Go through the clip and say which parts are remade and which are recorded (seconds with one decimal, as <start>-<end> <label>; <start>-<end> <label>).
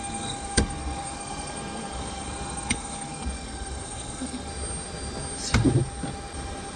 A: 0.0-4.5 remade; 4.5-6.8 recorded